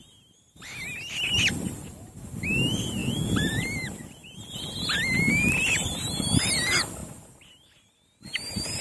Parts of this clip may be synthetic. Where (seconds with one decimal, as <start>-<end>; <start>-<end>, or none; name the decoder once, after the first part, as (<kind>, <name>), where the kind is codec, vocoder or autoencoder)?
none